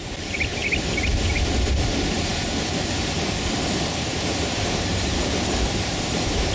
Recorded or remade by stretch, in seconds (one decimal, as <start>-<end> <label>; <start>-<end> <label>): 0.0-0.6 remade; 0.6-1.4 recorded; 1.4-6.5 remade

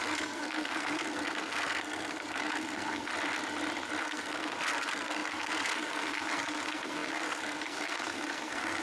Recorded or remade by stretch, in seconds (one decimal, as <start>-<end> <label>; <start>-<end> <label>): 0.0-3.1 remade; 3.1-4.0 recorded; 4.0-8.8 remade

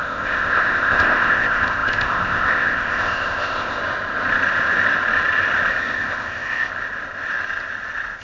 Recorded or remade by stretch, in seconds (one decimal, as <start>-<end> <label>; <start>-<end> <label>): 0.0-3.8 remade; 3.8-5.7 recorded; 5.7-6.7 remade; 6.7-8.2 recorded

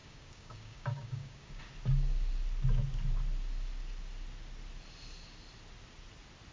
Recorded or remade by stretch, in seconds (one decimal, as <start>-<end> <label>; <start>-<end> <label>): 0.0-1.6 remade; 1.6-6.5 recorded

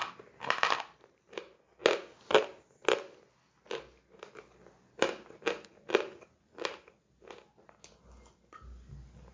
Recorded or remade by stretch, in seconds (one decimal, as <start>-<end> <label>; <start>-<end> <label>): 0.0-9.3 recorded

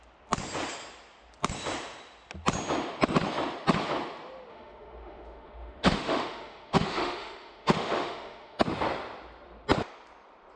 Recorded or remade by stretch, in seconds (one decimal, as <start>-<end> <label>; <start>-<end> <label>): 0.0-4.5 recorded; 4.5-8.6 remade; 8.6-10.6 recorded

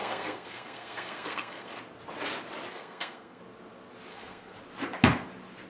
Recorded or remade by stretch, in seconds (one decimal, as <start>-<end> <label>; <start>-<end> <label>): 0.0-1.8 remade; 1.8-2.7 recorded; 2.7-3.4 remade; 3.4-4.1 recorded; 4.1-4.6 remade; 4.6-5.7 recorded